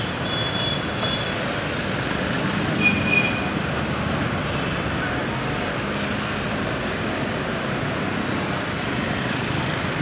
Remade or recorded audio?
recorded